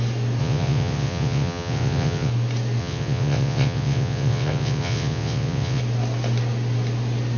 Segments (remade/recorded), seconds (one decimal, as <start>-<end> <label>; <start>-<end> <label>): 0.0-0.4 recorded; 0.4-2.3 remade; 2.3-2.8 recorded; 2.8-5.8 remade; 5.8-7.4 recorded